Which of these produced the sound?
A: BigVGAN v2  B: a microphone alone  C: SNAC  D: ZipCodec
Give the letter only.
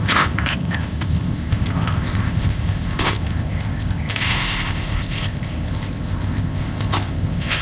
D